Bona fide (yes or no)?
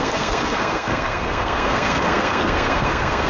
no